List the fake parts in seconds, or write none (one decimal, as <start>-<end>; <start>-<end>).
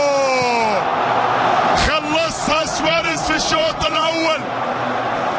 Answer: 2.4-4.1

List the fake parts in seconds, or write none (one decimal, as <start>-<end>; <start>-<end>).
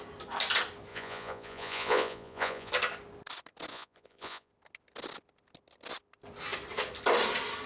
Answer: 0.9-2.7; 3.7-4.5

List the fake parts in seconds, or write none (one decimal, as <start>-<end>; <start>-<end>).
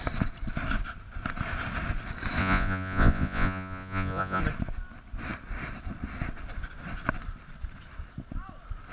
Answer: 2.4-4.4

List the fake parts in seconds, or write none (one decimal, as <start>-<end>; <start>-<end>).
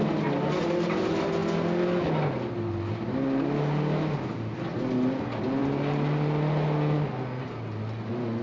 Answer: none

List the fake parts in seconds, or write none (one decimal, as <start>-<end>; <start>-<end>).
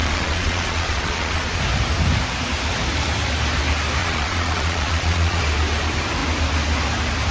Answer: 0.0-1.6; 4.0-5.4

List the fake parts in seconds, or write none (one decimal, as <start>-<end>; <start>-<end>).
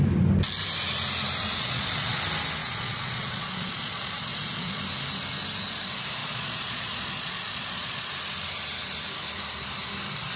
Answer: 1.4-2.2; 2.6-4.8; 6.2-8.0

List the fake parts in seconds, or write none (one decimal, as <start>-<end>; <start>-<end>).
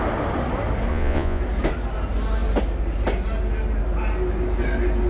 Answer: 0.9-1.4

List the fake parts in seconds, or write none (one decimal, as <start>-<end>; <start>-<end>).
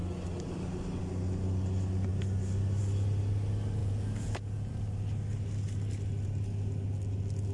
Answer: 3.8-4.7